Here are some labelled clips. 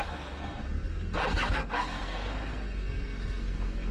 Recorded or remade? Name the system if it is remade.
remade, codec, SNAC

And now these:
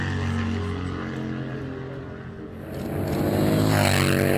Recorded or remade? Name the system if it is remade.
recorded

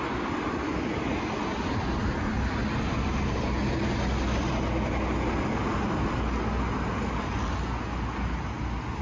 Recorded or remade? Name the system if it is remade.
recorded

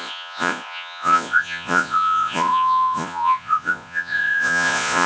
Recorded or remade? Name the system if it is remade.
remade, vocoder, Vocos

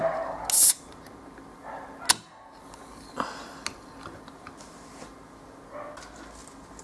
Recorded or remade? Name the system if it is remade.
recorded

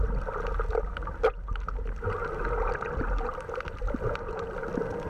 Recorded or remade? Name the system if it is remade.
recorded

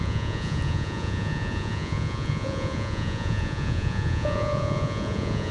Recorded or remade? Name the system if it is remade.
remade, vocoder, Vocos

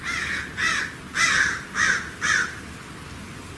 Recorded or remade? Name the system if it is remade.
recorded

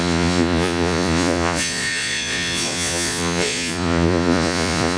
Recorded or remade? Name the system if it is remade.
remade, vocoder, Vocos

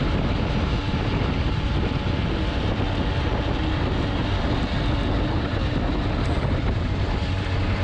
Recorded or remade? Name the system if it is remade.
recorded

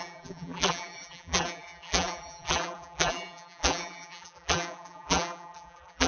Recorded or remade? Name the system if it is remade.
remade, vocoder, BigVGAN v2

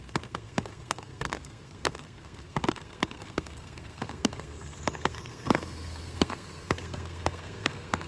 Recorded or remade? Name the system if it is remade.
remade, codec, SNAC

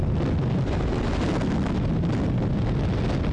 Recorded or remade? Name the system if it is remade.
recorded